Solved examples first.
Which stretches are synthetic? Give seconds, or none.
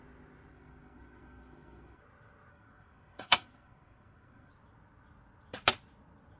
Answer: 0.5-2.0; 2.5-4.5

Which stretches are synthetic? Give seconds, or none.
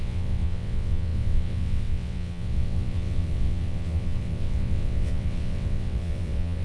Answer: 0.0-6.6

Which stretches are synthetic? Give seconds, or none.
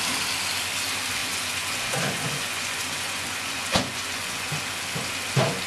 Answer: 1.2-4.6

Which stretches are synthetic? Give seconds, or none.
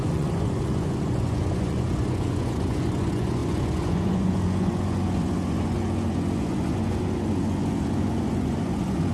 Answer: 0.0-9.1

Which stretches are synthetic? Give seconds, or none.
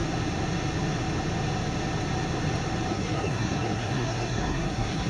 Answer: 2.9-5.1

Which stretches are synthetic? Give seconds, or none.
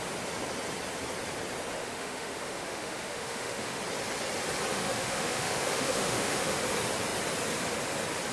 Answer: 1.8-3.8; 4.7-6.6